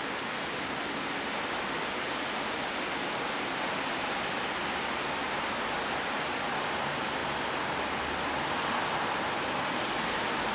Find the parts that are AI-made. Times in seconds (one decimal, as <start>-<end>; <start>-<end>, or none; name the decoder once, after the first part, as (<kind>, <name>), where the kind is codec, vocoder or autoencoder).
none